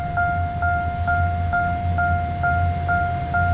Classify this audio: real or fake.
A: real